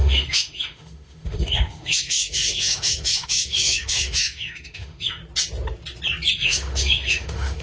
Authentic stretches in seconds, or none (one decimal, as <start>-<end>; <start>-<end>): 5.2-6.3